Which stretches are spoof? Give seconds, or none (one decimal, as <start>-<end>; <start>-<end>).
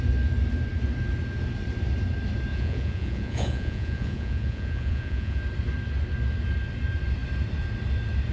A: 2.5-5.4